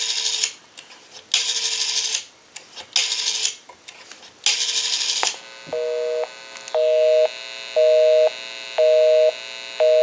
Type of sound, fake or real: real